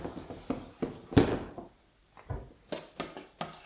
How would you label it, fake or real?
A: real